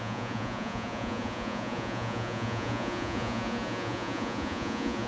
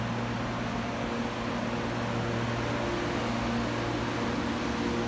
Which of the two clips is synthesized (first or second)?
first